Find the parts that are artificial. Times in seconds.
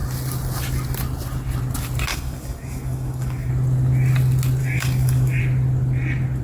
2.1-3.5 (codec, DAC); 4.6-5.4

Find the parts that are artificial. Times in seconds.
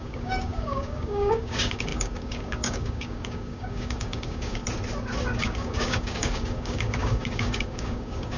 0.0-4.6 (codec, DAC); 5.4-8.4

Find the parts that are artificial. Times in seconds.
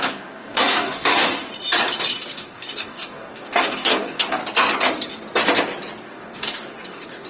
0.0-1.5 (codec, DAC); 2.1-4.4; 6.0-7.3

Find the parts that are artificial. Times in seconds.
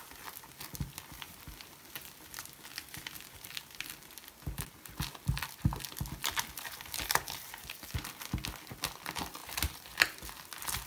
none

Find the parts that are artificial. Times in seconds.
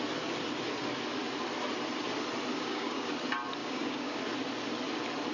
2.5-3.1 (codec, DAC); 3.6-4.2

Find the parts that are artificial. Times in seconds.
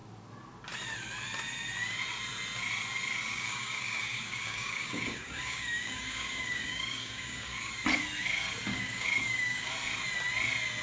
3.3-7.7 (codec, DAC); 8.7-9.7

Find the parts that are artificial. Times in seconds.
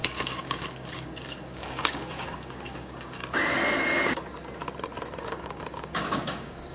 0.0-3.2 (codec, DAC); 5.2-6.7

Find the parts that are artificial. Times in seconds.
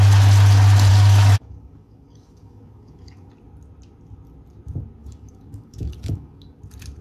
0.9-3.3 (codec, DAC); 5.0-6.6